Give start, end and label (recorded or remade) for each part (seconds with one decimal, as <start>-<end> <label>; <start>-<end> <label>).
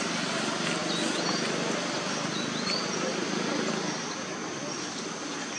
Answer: 0.0-5.6 recorded